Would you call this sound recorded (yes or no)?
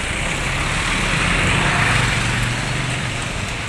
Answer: yes